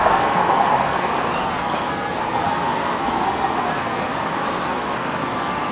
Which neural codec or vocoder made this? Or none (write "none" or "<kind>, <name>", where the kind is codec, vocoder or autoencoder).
codec, SNAC